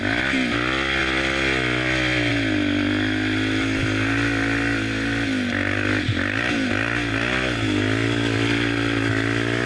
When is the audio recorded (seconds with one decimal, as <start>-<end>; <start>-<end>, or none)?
0.0-9.7